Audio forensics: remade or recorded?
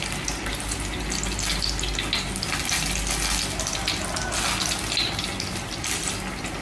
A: recorded